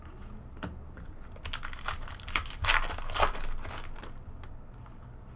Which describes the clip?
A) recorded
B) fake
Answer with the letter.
A